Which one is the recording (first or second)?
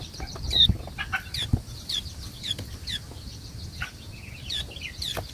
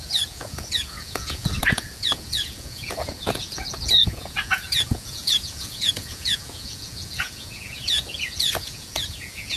first